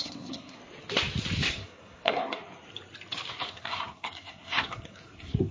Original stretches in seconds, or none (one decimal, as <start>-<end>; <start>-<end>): 0.6-1.4; 2.4-3.3